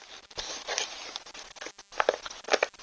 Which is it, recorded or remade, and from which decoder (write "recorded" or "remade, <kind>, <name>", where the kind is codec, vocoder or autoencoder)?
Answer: recorded